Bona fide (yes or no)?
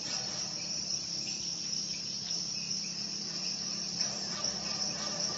no